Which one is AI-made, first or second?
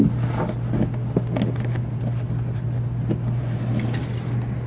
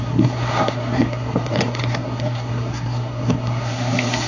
second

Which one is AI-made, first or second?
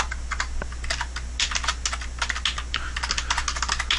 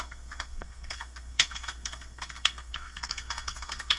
second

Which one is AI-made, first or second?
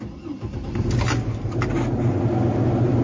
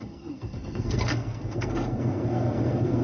second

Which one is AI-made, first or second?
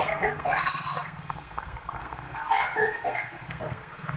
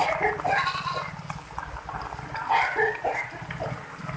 first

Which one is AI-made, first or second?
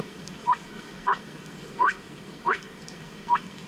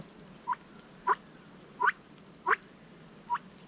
first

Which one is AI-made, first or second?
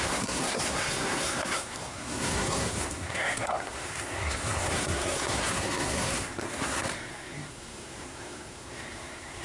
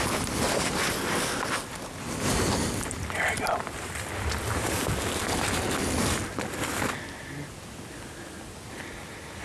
first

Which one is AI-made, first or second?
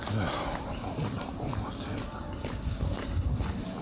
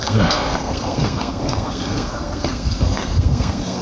second